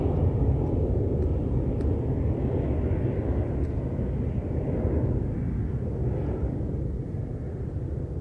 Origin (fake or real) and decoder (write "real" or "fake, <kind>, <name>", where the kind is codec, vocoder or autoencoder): real